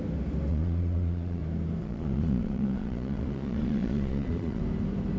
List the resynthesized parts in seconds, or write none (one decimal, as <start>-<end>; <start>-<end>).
0.5-1.4; 1.8-4.6